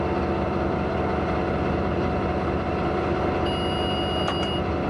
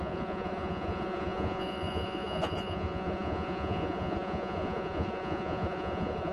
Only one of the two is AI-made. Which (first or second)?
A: second